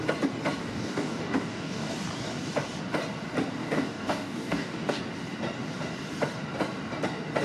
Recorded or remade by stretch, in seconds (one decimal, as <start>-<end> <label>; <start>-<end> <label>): 0.0-0.6 recorded; 0.6-1.9 remade; 1.9-3.6 recorded; 3.6-5.0 remade; 5.0-7.4 recorded

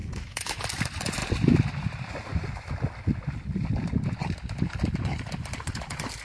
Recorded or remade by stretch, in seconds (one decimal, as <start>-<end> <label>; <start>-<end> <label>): 0.0-0.6 remade; 0.6-6.2 recorded